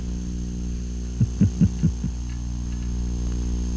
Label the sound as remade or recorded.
recorded